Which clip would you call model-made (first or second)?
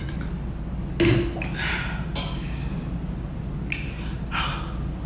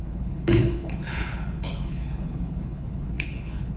second